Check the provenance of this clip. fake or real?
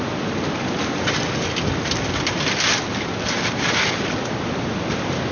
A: real